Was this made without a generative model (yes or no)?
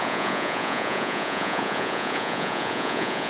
no